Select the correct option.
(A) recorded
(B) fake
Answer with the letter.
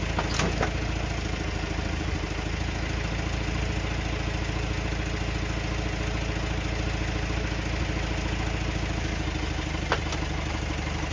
A